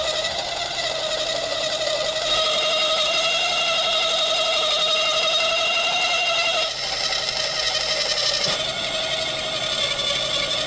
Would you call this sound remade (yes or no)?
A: no